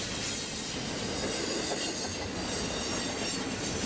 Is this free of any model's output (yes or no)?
yes